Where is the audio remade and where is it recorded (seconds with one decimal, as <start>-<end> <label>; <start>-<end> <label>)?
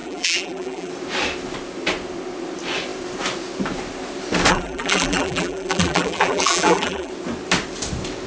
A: 0.0-0.9 remade; 0.9-4.5 recorded; 4.5-7.1 remade; 7.1-8.3 recorded